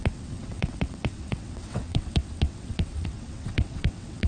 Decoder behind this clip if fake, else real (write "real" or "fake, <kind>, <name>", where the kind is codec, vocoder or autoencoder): fake, vocoder, WaveNeXt